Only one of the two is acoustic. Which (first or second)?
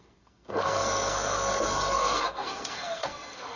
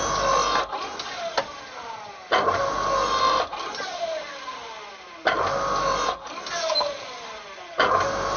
second